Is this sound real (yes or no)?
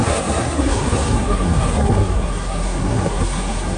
no